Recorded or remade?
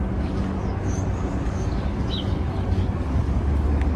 remade